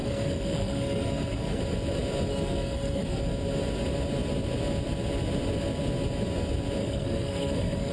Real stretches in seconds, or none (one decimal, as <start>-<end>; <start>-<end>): 1.6-2.3; 3.2-6.8